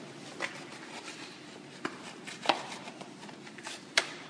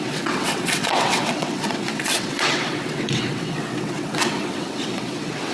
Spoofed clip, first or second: second